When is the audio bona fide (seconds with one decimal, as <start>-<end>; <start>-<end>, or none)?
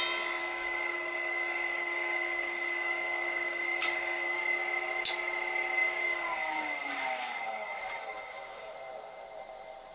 0.0-0.4; 4.4-5.8; 8.7-9.9